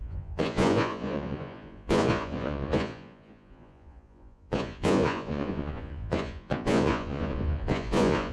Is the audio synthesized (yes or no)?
yes